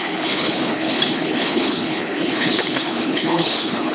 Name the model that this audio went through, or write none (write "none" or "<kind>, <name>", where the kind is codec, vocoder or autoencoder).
codec, HILCodec